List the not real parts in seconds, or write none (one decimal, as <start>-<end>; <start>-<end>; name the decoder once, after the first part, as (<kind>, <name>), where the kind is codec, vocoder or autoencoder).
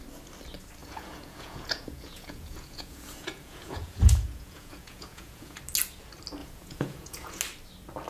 0.8-5.6 (vocoder, Vocos); 6.4-7.4